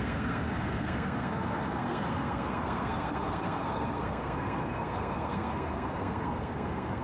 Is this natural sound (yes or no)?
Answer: no